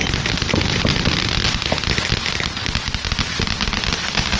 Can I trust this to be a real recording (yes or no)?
yes